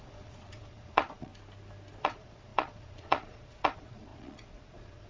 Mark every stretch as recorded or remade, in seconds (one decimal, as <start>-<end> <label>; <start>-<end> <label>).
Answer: 0.0-1.3 remade; 1.3-2.0 recorded; 2.0-5.1 remade